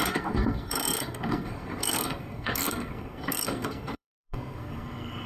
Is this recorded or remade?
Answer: remade